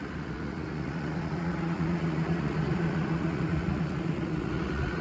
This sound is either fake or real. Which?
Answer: fake